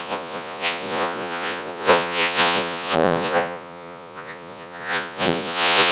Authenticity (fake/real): fake